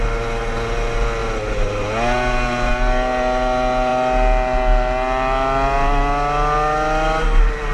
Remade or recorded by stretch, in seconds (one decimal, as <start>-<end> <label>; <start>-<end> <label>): 0.0-7.7 recorded